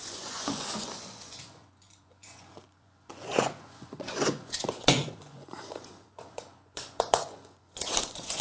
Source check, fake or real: fake